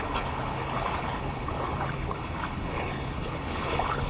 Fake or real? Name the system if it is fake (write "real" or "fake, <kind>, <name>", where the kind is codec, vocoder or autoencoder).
fake, codec, HILCodec